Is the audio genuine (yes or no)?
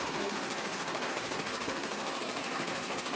no